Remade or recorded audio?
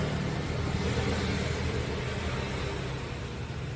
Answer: recorded